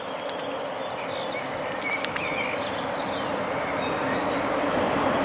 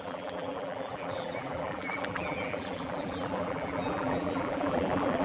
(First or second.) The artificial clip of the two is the second